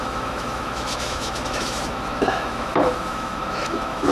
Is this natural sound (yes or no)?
no